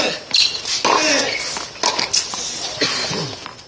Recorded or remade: recorded